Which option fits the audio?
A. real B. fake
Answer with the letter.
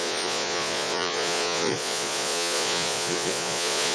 B